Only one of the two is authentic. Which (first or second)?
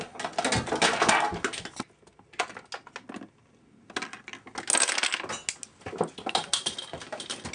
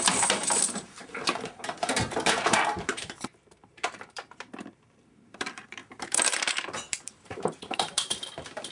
first